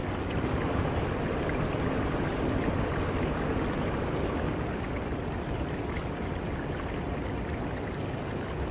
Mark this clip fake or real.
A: real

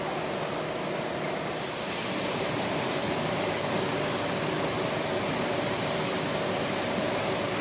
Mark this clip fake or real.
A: real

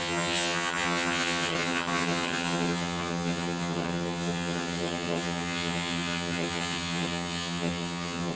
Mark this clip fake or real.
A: fake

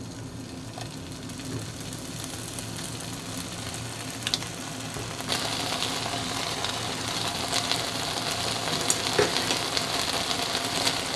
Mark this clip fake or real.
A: real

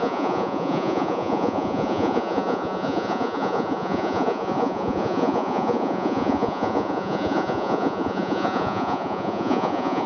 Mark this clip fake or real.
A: fake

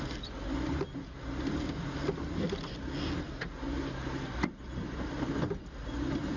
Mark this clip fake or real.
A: real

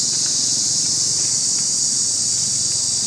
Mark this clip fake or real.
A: real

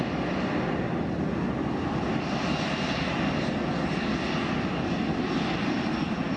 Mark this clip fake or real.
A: real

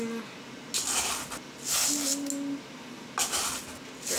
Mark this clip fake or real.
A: real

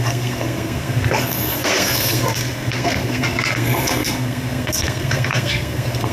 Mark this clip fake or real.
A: fake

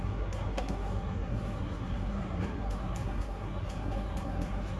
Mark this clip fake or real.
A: fake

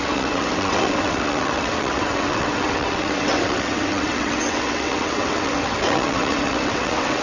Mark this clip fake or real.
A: fake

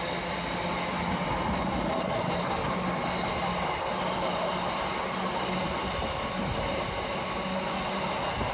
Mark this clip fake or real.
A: real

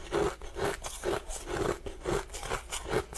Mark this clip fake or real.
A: real